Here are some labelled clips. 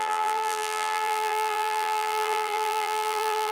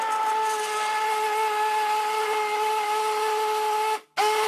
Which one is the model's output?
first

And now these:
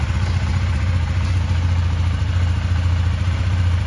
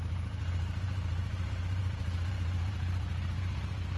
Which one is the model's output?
second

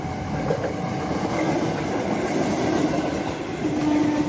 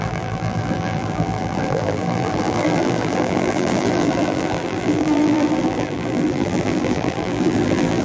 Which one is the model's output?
second